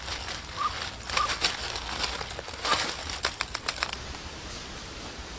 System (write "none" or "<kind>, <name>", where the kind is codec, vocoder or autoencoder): none